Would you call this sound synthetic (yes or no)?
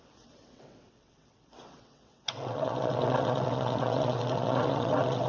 yes